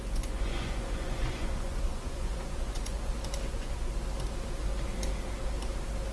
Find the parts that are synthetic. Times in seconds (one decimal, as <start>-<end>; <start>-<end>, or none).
0.0-3.1; 3.5-4.0